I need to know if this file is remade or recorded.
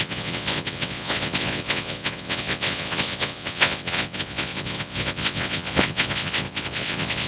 remade